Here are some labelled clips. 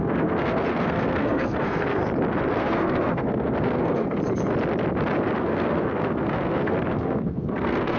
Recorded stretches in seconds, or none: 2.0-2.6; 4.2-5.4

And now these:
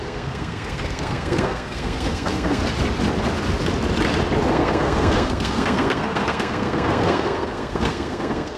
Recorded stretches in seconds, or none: 2.6-4.5

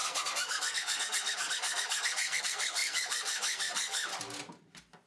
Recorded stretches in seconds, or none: 4.1-5.1

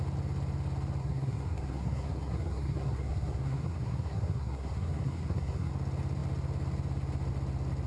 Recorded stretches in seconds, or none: 0.0-1.0; 5.7-7.9

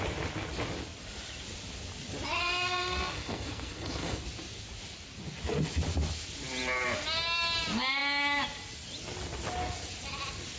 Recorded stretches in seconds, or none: 0.0-2.4; 4.2-10.6

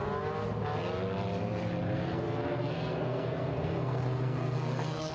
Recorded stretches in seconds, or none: 0.0-1.9

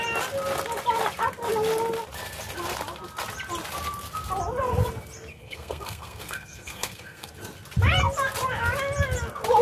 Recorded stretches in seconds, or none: 0.0-5.3; 7.3-9.6